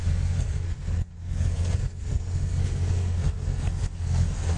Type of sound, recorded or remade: remade